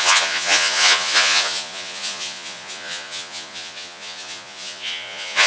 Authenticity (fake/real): fake